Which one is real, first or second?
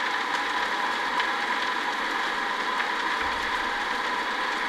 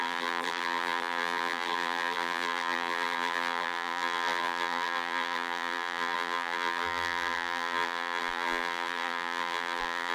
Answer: first